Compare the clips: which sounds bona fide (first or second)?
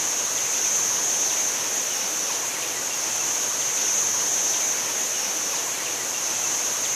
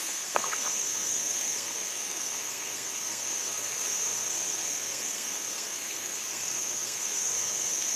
first